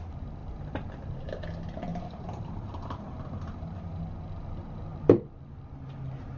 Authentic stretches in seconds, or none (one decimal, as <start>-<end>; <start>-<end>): 0.0-0.4; 0.9-1.9; 4.0-6.4